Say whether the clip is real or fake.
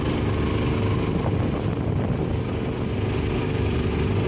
real